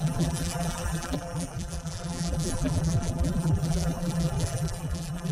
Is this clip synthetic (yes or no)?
yes